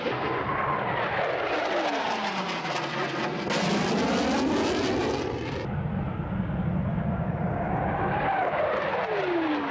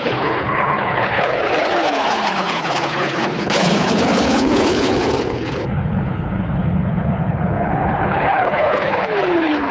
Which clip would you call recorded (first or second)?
first